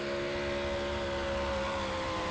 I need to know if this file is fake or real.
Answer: real